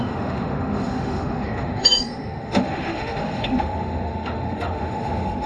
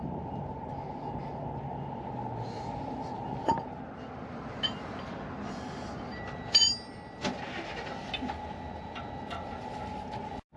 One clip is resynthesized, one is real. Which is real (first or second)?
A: second